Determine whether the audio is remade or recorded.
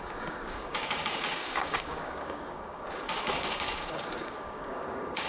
remade